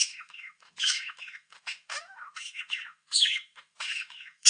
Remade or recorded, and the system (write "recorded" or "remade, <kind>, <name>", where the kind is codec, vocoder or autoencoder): remade, autoencoder, DAC-VAE